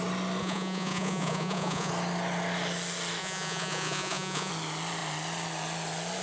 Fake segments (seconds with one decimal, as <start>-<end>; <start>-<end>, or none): 0.4-1.9; 3.2-4.5